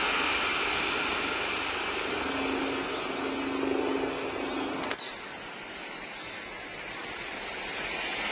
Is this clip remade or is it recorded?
recorded